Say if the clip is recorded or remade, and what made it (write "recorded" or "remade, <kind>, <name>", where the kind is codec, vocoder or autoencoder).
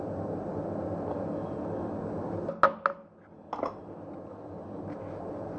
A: recorded